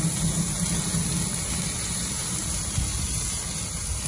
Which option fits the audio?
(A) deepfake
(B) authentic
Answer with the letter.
B